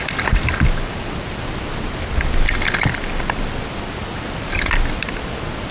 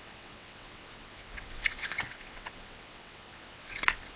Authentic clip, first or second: first